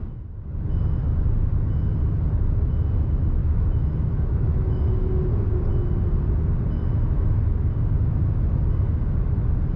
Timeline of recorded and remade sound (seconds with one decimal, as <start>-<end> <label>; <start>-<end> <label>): 0.0-3.4 recorded; 3.4-5.1 remade; 5.1-9.8 recorded